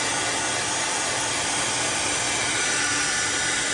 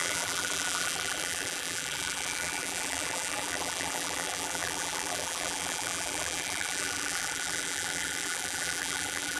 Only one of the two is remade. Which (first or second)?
second